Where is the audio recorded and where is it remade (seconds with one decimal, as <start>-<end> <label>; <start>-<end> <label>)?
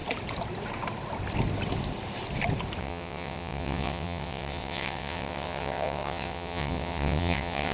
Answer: 0.0-2.8 recorded; 2.8-7.7 remade